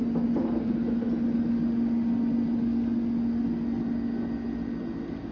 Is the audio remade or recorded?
recorded